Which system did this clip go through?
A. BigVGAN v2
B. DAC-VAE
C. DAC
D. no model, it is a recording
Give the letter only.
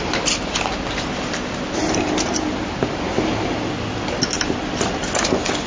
D